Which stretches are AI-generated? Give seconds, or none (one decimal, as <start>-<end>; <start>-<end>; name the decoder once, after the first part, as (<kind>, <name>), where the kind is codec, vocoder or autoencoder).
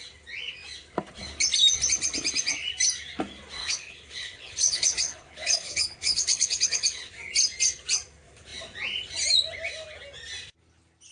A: 3.6-7.1 (codec, HILCodec)